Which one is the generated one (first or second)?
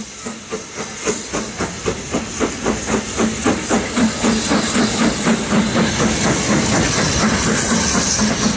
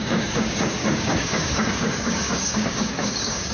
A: second